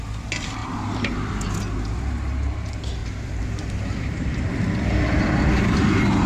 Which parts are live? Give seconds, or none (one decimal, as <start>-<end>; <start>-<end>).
0.0-0.6; 1.3-3.0; 4.5-6.3